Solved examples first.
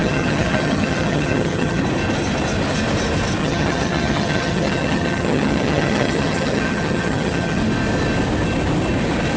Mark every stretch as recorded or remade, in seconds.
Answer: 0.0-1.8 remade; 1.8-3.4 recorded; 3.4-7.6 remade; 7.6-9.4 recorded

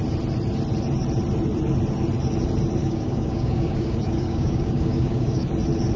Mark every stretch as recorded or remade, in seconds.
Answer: 0.0-2.8 recorded; 2.8-5.5 remade; 5.5-6.0 recorded